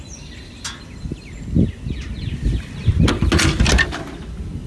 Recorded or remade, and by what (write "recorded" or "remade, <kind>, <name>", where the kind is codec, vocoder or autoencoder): recorded